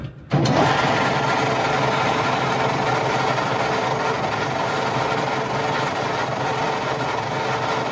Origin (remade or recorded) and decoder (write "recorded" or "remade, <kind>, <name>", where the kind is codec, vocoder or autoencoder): recorded